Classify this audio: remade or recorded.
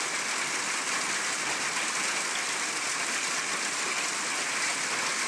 recorded